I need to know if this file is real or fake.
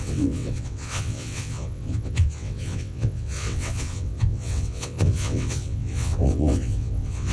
fake